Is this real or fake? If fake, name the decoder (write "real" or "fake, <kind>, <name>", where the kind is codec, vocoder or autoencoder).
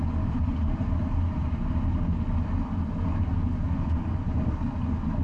real